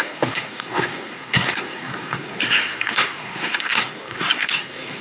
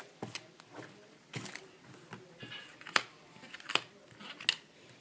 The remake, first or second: first